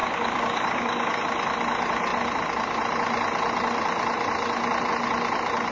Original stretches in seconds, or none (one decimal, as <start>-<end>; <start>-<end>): 1.2-5.7